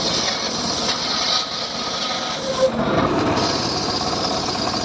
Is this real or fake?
real